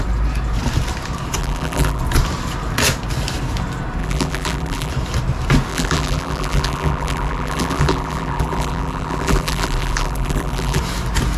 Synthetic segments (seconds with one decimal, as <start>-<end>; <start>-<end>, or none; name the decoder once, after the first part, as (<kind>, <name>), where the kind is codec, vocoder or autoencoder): 1.4-2.0 (vocoder, BigVGAN v2); 4.0-4.9; 5.7-10.8